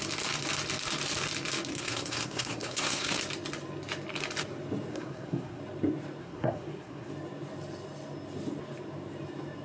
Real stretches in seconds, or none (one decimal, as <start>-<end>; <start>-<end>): 0.0-1.7; 3.2-4.9; 5.6-6.2; 7.1-9.6